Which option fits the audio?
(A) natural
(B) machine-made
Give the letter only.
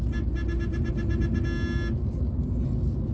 A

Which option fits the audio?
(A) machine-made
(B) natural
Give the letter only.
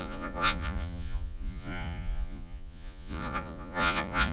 A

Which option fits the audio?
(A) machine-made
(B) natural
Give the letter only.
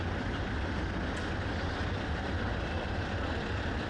B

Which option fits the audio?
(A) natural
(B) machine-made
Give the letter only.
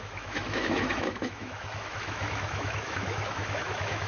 B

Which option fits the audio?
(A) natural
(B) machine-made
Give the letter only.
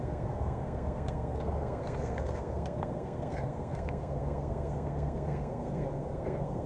B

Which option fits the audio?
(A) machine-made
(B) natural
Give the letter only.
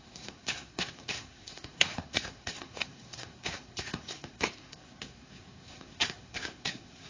A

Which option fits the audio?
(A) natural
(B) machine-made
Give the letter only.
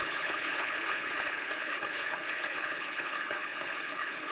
B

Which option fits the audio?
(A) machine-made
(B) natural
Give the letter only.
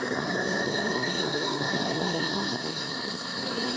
A